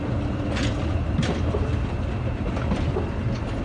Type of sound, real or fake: real